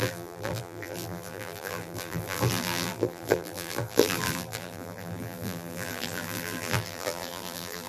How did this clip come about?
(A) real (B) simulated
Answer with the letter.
B